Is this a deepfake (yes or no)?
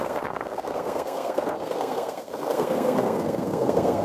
yes